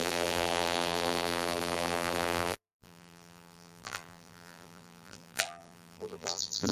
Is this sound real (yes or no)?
no